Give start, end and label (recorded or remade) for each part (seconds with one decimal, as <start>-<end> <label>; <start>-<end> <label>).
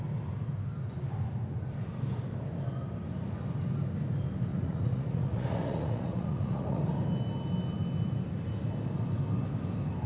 0.0-4.5 recorded; 4.5-6.9 remade; 6.9-10.1 recorded